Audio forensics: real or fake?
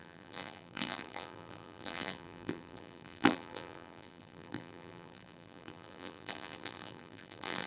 fake